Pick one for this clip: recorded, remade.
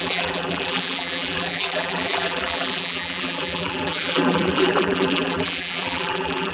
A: remade